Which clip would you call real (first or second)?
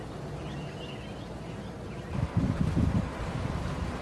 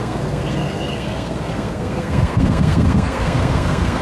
first